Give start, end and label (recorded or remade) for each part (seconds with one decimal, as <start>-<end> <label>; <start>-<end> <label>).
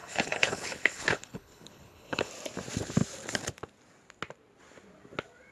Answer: 0.0-2.3 remade; 2.3-5.5 recorded